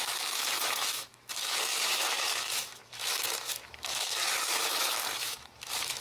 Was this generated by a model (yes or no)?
yes